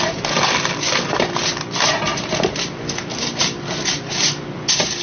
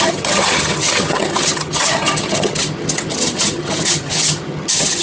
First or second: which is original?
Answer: first